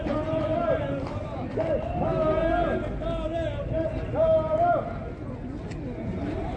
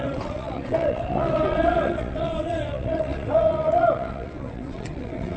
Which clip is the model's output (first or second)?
second